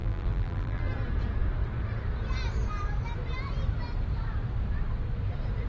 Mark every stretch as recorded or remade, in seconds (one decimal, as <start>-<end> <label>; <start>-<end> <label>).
0.0-0.9 remade; 0.9-5.7 recorded